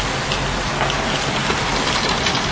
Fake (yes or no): no